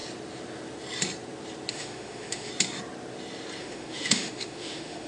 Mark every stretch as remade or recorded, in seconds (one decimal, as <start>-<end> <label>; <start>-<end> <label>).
0.0-1.7 recorded; 1.7-2.5 remade; 2.5-3.6 recorded; 3.6-5.1 remade